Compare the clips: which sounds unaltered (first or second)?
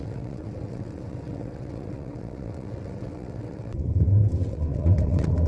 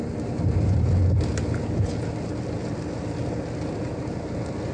second